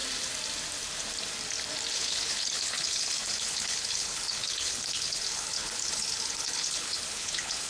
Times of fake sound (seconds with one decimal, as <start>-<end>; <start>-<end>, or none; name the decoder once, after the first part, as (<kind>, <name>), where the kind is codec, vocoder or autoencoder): 1.9-7.7 (codec, HILCodec)